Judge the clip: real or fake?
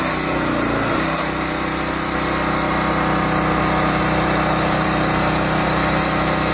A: real